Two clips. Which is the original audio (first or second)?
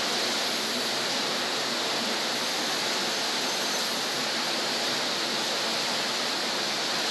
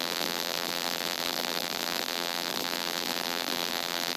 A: first